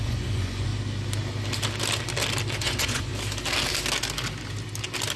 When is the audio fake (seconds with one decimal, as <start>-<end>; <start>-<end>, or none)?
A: 0.0-0.7; 2.6-3.1